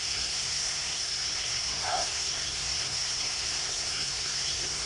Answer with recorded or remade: remade